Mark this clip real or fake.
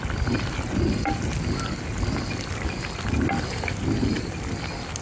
real